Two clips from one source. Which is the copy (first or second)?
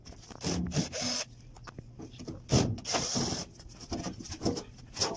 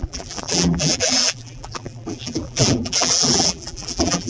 second